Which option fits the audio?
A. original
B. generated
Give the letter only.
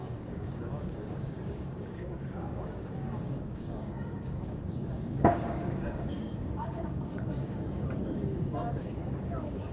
B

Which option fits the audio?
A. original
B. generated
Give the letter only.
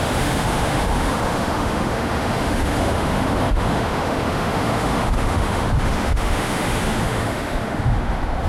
B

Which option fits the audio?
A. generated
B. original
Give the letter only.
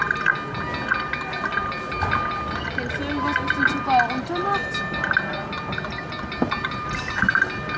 B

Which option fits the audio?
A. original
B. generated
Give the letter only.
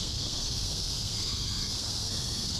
B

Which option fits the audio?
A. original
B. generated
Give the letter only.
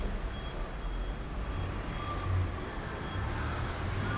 A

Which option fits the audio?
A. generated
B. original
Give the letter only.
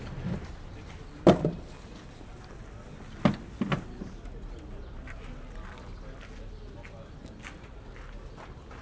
B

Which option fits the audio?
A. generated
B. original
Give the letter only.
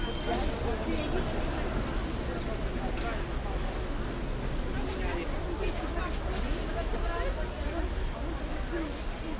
B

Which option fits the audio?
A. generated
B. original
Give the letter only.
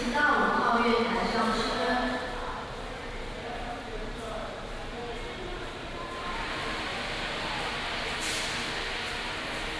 A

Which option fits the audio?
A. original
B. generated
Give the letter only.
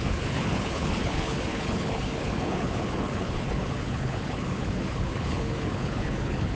B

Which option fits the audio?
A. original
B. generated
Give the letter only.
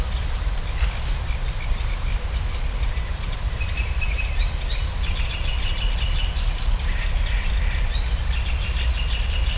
A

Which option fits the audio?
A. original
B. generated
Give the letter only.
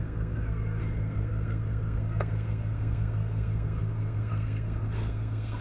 B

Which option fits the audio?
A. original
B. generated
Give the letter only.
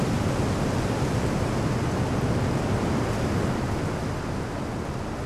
A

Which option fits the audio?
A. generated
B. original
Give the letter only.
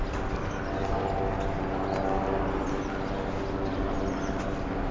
B